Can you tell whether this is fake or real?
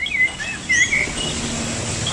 real